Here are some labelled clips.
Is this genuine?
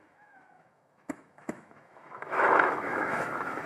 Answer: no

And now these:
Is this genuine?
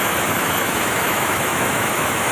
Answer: no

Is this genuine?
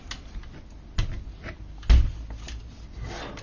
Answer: yes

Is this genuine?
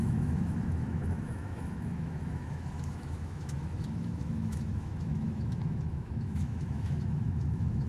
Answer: no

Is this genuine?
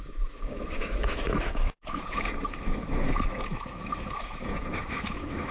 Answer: no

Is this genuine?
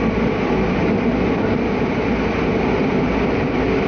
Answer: yes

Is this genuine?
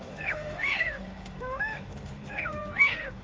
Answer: no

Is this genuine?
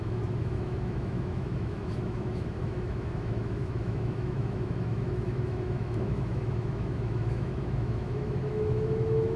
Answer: no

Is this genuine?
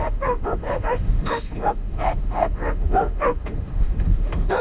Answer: no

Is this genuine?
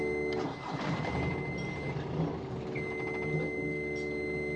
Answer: yes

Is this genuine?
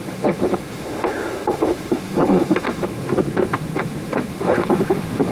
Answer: no